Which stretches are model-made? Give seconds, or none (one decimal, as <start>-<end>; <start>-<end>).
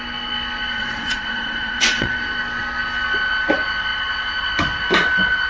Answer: 0.7-2.1